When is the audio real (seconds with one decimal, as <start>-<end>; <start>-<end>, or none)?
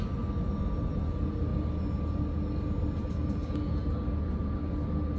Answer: 0.0-5.2